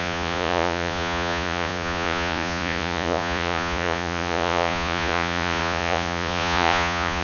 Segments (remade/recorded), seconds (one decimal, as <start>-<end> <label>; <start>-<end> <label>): 0.0-7.2 remade